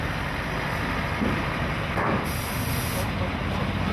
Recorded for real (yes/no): yes